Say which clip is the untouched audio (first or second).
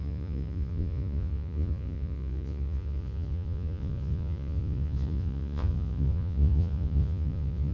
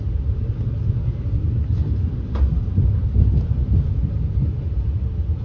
second